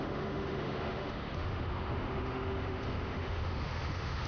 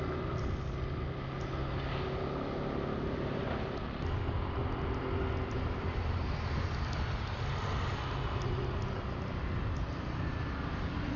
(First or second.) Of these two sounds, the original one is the second